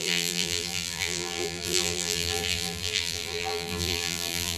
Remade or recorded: remade